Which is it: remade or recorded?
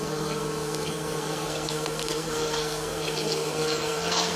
remade